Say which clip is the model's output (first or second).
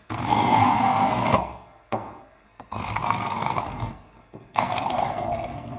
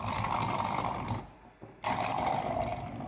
first